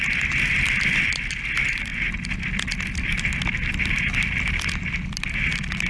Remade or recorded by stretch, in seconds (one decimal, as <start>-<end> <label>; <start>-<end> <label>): 0.0-5.9 recorded